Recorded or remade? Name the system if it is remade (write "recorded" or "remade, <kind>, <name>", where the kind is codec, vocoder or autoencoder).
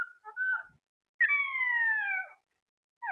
recorded